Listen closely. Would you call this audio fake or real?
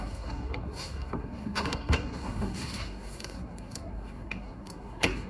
fake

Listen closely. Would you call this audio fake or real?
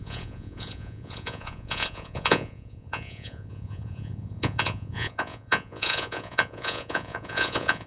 fake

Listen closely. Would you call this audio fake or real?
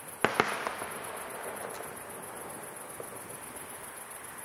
real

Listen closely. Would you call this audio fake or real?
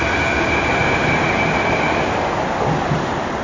real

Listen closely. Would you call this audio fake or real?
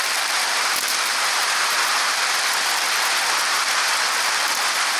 fake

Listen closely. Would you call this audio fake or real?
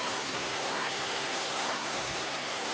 fake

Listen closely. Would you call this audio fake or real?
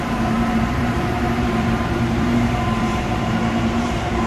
fake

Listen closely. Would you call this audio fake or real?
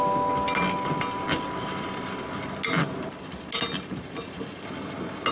real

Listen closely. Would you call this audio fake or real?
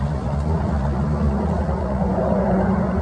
fake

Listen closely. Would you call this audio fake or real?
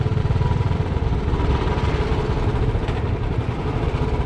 real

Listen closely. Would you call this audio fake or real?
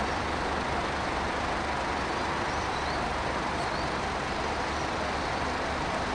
real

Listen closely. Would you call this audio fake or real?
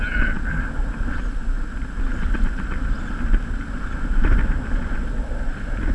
real